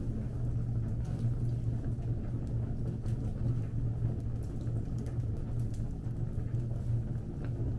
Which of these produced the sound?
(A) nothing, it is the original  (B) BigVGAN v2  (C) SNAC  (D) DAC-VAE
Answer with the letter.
A